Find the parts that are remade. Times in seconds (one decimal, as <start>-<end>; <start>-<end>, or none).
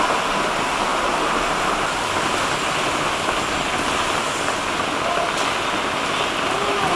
none